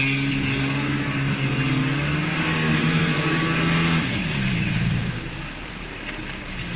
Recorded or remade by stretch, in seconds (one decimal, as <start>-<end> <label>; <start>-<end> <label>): 0.0-1.8 recorded; 1.8-5.7 remade; 5.7-6.8 recorded